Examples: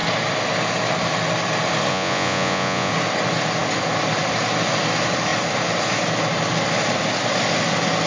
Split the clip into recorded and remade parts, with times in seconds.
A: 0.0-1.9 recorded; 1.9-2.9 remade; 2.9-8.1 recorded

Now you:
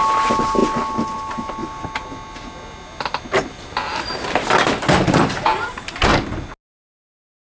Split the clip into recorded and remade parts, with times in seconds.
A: 0.0-7.5 recorded